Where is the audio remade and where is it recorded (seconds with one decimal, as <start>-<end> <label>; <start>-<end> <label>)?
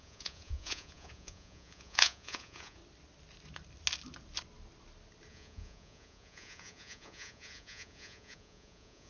0.0-2.8 remade; 2.8-5.3 recorded; 5.3-9.1 remade